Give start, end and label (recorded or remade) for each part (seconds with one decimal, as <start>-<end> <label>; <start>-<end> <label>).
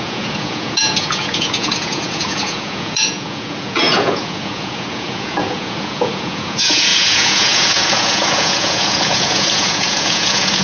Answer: 0.0-10.6 remade